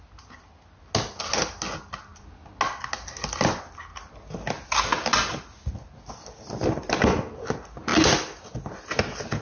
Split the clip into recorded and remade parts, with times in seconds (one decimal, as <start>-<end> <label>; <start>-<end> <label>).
0.0-9.4 recorded